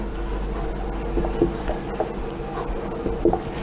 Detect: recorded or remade recorded